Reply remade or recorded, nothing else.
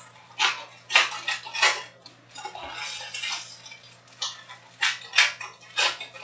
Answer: recorded